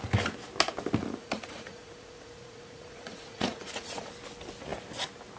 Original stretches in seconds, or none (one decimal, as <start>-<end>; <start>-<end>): 0.0-1.0; 4.1-5.4